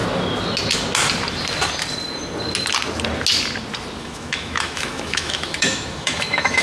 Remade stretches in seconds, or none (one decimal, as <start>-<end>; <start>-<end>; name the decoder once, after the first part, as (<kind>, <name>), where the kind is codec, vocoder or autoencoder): 4.0-6.6 (autoencoder, DAC-VAE)